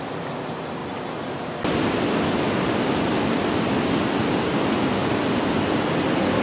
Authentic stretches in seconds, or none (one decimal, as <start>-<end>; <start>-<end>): 0.0-6.4